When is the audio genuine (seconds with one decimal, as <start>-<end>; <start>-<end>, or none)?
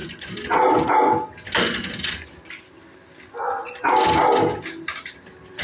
0.0-5.6